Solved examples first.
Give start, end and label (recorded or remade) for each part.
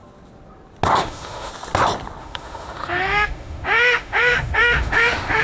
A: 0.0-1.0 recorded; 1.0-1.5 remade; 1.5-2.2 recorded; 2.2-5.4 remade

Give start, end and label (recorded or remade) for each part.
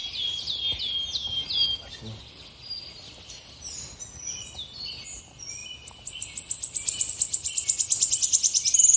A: 0.0-9.0 recorded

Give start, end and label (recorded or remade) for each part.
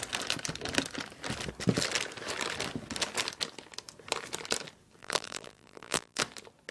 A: 0.0-5.0 recorded; 5.0-6.2 remade; 6.2-6.7 recorded